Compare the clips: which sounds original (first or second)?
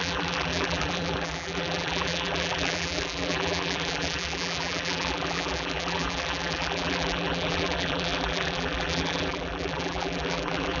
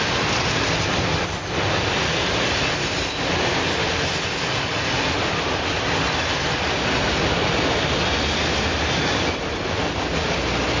second